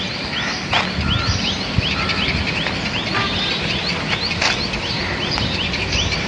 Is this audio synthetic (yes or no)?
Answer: no